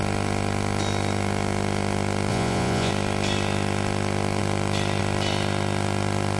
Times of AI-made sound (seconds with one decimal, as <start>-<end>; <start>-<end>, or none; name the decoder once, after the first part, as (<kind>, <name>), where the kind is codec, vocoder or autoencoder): 2.3-2.9 (vocoder, Vocos)